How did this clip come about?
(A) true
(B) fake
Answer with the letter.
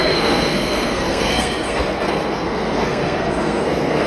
B